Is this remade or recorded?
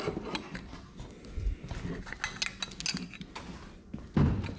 recorded